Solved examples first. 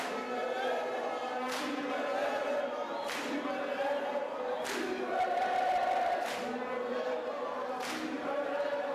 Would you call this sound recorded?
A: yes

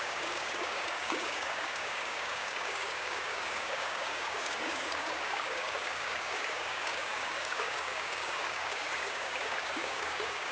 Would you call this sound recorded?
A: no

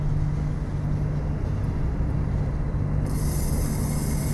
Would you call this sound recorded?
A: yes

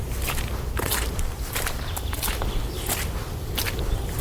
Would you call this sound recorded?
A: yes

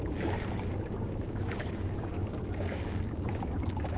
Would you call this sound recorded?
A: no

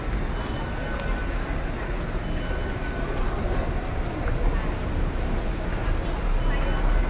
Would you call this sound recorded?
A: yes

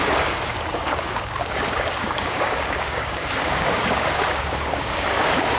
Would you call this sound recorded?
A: no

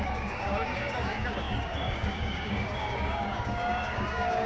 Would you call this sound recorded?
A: no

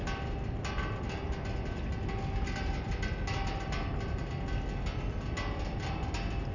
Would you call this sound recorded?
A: yes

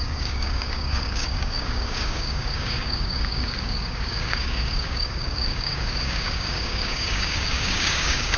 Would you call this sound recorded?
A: no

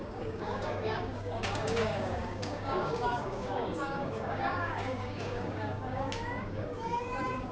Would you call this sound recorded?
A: no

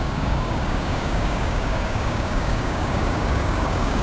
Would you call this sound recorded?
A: no